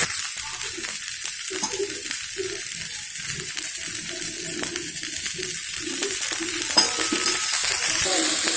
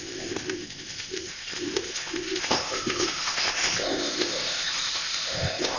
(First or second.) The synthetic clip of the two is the second